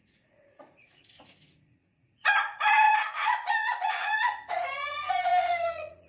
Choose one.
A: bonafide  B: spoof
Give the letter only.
B